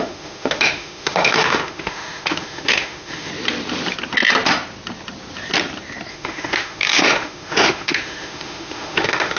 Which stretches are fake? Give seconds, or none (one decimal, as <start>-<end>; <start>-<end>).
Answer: 0.0-3.3; 6.1-9.4